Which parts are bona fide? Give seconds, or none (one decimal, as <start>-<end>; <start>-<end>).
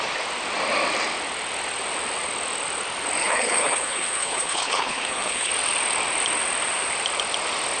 0.0-3.2; 5.5-7.8